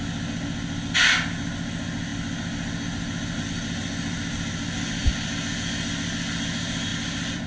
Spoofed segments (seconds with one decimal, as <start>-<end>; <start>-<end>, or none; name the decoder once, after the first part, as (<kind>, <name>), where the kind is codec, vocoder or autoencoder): 5.0-5.5 (vocoder, BigVGAN v2); 6.9-7.5

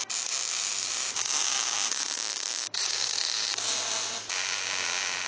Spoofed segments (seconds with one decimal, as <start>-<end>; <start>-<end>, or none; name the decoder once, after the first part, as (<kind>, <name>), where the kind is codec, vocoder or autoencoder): 0.5-3.7 (codec, DAC)

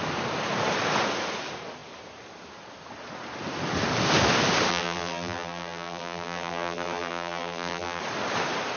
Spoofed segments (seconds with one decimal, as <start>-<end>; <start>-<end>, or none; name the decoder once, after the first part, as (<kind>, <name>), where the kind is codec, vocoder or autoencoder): 4.7-8.0 (vocoder, BigVGAN v2)

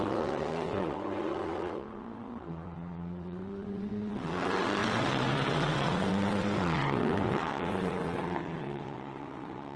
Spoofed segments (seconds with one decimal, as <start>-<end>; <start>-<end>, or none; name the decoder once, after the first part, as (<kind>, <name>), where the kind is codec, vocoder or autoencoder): 0.0-9.8 (vocoder, WaveNeXt)

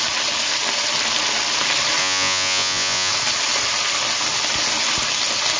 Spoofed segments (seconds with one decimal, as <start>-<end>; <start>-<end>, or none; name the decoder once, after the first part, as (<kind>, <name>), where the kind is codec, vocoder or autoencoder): 2.0-3.1 (vocoder, Vocos)

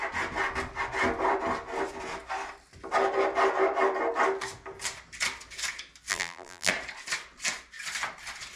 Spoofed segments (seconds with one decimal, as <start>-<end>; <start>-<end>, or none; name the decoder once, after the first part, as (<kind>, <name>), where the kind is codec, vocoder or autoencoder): 6.1-6.7 (vocoder, BigVGAN v2)